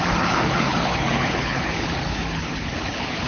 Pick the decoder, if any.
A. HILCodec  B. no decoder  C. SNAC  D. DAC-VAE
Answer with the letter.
A